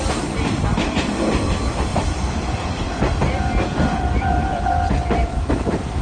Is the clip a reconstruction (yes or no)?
yes